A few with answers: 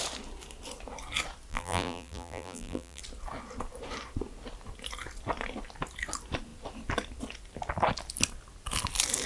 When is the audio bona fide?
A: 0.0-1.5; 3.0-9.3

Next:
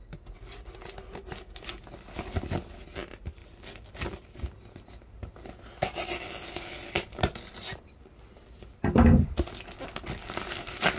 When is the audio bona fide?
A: 0.0-11.0